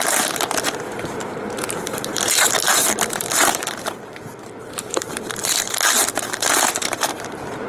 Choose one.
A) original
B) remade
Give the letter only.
B